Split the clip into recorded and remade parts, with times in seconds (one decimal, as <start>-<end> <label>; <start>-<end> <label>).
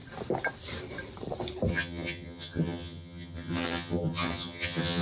0.0-1.7 recorded; 1.7-5.0 remade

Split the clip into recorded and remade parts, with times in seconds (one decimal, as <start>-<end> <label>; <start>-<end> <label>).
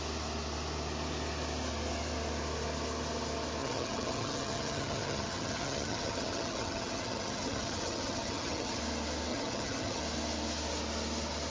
0.0-3.6 recorded; 3.6-8.8 remade; 8.8-9.3 recorded; 9.3-10.0 remade; 10.0-11.5 recorded